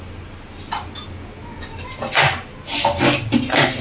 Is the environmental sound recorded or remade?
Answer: recorded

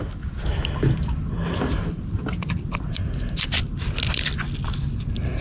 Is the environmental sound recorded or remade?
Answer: recorded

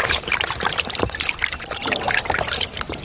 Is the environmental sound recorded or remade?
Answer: remade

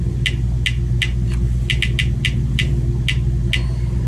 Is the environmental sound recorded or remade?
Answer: recorded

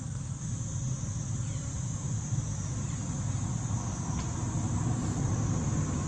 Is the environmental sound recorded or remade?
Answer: recorded